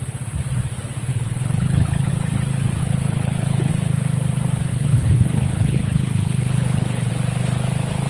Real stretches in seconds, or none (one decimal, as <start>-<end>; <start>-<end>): 0.0-1.1; 2.1-2.8; 3.7-4.7; 7.1-8.1